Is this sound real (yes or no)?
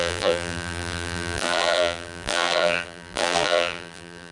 no